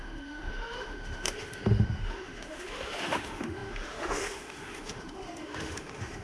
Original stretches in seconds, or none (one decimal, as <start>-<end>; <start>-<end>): none